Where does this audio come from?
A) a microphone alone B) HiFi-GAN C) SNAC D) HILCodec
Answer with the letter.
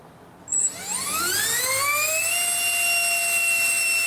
A